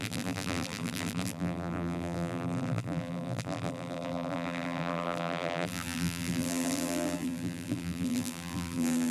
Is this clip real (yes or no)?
no